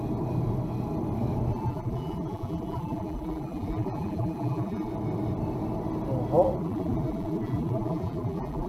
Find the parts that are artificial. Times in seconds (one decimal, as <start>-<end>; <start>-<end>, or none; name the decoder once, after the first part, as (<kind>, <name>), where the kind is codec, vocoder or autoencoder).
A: 1.5-4.9 (vocoder, BigVGAN v2); 6.6-8.7